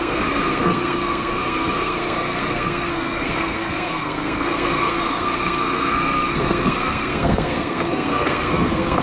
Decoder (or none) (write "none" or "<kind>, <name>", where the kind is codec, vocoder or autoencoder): codec, SNAC